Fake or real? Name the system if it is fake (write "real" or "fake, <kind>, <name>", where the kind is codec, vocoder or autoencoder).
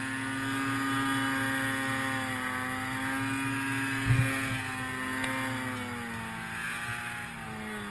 real